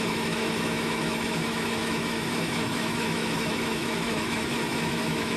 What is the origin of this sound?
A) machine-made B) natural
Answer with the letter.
A